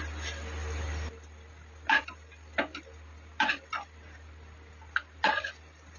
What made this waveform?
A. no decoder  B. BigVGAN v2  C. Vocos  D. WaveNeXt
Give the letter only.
A